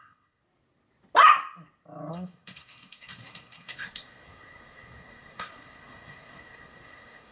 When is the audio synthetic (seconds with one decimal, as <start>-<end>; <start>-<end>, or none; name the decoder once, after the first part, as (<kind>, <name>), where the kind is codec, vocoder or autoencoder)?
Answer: 0.0-0.4 (codec, SNAC); 2.1-7.3